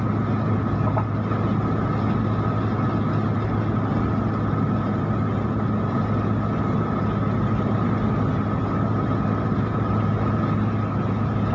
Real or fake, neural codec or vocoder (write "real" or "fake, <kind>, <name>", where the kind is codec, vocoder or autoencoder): real